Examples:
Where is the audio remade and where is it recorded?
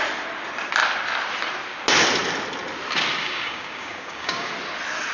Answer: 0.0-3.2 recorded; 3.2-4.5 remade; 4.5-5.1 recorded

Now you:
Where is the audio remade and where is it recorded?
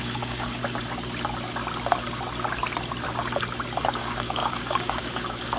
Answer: 0.0-0.6 remade; 0.6-4.0 recorded; 4.0-5.6 remade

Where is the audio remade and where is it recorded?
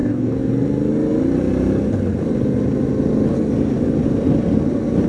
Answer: 0.0-0.5 remade; 0.5-5.1 recorded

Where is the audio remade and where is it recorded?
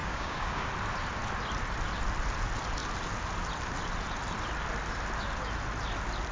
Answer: 0.0-0.7 remade; 0.7-6.3 recorded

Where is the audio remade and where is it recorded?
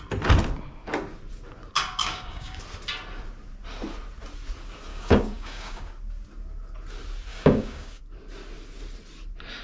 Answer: 0.0-2.0 recorded; 2.0-2.6 remade; 2.6-4.9 recorded; 4.9-5.9 remade; 5.9-7.3 recorded; 7.3-8.0 remade; 8.0-9.6 recorded